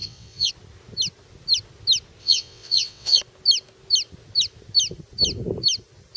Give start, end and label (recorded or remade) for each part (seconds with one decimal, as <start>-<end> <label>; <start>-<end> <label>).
0.0-0.5 remade; 0.5-2.2 recorded; 2.2-3.2 remade; 3.2-6.2 recorded